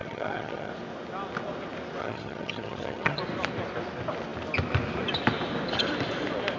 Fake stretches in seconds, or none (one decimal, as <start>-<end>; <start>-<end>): 0.0-0.7; 2.0-3.2

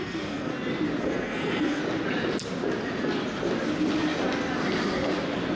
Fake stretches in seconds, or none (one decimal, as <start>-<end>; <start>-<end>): 0.0-0.5; 1.0-1.8

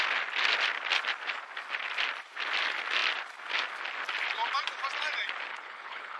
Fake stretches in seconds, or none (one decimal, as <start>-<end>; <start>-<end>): 5.5-6.2

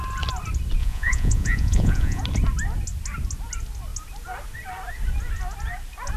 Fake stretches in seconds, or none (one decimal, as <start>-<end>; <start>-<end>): 0.8-2.2